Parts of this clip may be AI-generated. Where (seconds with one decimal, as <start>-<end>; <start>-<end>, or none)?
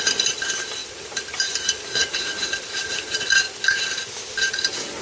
0.8-1.6; 2.0-3.6